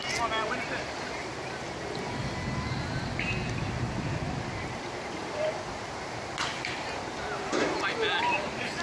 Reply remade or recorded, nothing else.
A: recorded